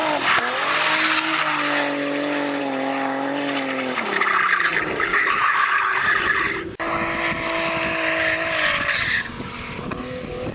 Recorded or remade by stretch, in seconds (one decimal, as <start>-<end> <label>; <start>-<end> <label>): 0.0-5.1 recorded; 5.1-5.7 remade; 5.7-10.5 recorded